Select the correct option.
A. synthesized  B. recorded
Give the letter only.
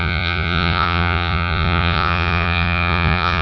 A